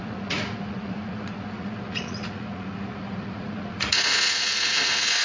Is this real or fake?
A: fake